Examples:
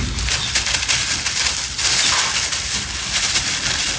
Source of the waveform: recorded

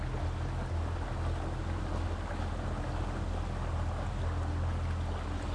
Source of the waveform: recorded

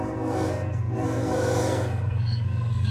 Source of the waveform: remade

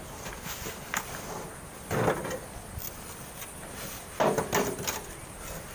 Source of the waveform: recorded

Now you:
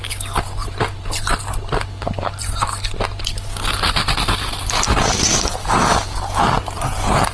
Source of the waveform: recorded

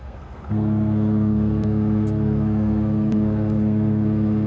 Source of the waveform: remade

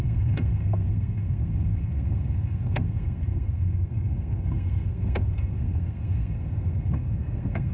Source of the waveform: remade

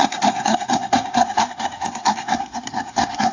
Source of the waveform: remade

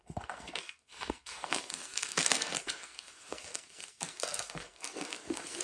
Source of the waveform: remade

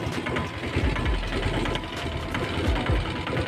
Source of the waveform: recorded